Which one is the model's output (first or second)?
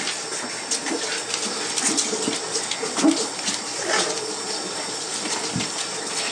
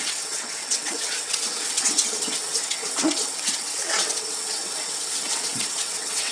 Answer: second